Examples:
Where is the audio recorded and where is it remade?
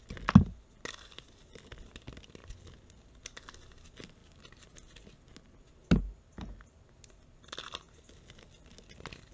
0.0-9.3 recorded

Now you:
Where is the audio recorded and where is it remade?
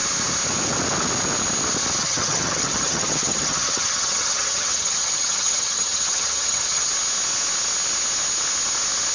0.0-2.0 recorded; 2.0-6.9 remade; 6.9-9.1 recorded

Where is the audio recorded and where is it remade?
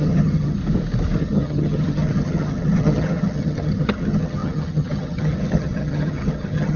0.0-0.6 remade; 0.6-1.2 recorded; 1.2-6.8 remade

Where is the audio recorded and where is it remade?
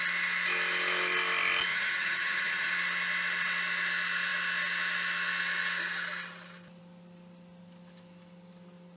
0.0-1.7 recorded; 1.7-2.7 remade; 2.7-9.0 recorded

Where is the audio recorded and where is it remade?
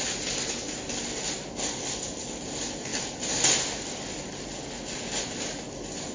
0.0-6.1 recorded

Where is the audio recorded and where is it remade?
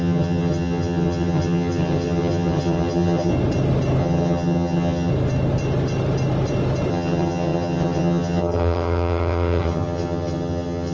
0.0-3.3 remade; 3.3-4.0 recorded; 4.0-5.1 remade; 5.1-6.9 recorded; 6.9-10.9 remade